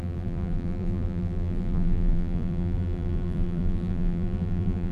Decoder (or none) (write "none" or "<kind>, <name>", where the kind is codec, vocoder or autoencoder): vocoder, BigVGAN v2